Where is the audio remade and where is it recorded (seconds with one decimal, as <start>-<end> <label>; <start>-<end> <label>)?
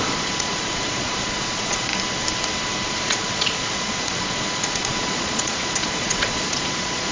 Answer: 0.0-1.9 remade; 1.9-2.9 recorded; 2.9-7.1 remade